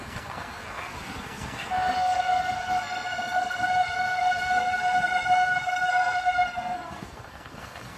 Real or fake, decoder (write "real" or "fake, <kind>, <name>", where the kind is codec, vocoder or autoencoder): fake, codec, SNAC